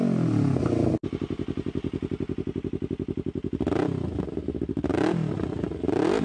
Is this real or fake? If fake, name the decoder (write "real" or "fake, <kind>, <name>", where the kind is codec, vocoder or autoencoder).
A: real